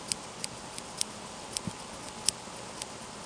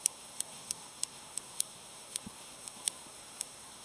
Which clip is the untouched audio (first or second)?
first